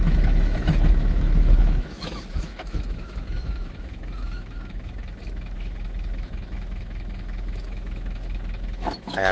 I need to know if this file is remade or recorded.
remade